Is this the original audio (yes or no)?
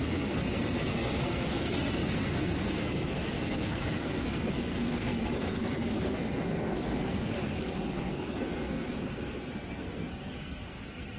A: no